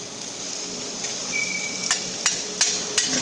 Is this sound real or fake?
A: real